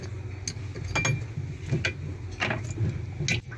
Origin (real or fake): real